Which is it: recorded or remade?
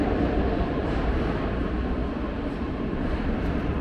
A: remade